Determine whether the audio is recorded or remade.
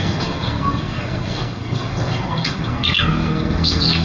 remade